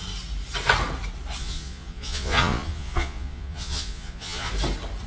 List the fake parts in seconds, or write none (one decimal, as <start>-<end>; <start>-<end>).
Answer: 1.4-4.5